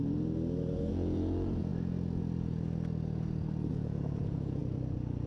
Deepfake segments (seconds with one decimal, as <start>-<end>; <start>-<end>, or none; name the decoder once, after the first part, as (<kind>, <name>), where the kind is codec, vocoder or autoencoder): 0.9-1.7 (vocoder, Vocos); 3.7-4.6